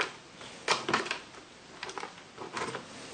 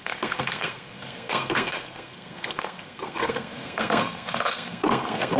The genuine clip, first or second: first